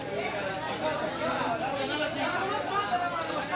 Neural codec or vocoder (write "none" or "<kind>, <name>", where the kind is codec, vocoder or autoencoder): none